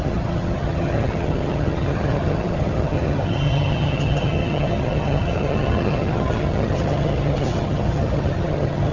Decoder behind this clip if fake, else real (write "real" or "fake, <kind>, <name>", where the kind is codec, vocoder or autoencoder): fake, vocoder, HiFi-GAN